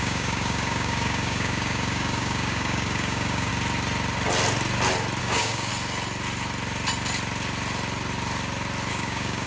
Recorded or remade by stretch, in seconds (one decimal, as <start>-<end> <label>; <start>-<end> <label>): 0.0-3.5 remade; 3.5-5.2 recorded; 5.2-5.7 remade; 5.7-8.9 recorded; 8.9-9.5 remade